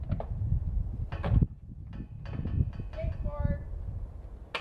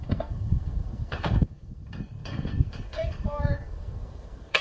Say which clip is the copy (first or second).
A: second